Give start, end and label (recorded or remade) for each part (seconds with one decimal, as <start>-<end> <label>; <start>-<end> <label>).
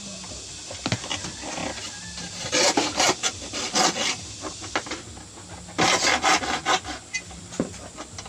0.0-8.3 recorded